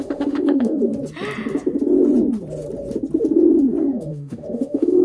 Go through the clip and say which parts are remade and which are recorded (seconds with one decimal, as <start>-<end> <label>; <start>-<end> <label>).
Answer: 0.0-0.8 remade; 0.8-3.8 recorded; 3.8-5.0 remade

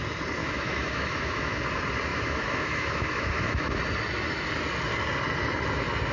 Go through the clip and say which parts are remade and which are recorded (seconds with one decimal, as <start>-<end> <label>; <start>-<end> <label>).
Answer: 0.0-0.4 recorded; 0.4-1.6 remade; 1.6-2.1 recorded; 2.1-3.8 remade; 3.8-6.1 recorded

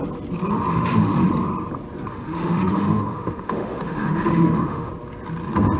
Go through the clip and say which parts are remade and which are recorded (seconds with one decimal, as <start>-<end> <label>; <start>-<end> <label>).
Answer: 0.0-0.7 recorded; 0.7-1.3 remade; 1.3-2.1 recorded; 2.1-4.9 remade; 4.9-5.8 recorded

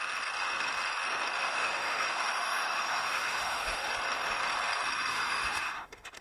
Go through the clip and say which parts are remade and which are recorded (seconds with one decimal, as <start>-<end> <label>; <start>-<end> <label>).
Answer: 0.0-1.4 recorded; 1.4-3.9 remade; 3.9-5.1 recorded; 5.1-6.2 remade

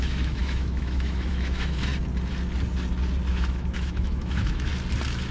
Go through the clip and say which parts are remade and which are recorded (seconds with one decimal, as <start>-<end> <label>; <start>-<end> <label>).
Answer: 0.0-1.9 remade; 1.9-3.3 recorded; 3.3-4.7 remade; 4.7-5.3 recorded

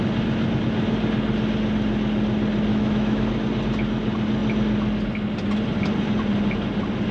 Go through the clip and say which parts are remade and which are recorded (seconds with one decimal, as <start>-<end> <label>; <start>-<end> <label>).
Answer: 0.0-2.7 recorded; 2.7-3.3 remade; 3.3-7.1 recorded

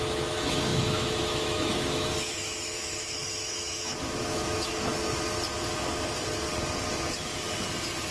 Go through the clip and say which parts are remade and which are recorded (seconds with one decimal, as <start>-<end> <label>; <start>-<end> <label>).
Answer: 0.0-4.9 remade; 4.9-8.1 recorded

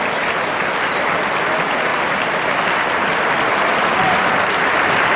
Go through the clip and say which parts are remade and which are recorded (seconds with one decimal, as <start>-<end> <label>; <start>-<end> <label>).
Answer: 0.0-5.2 recorded